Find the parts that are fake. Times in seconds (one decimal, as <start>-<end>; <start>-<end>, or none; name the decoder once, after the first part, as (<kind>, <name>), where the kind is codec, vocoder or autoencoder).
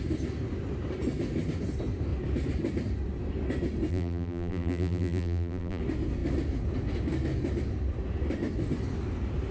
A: 3.9-5.8 (vocoder, BigVGAN v2)